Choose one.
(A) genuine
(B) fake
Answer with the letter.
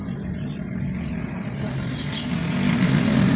A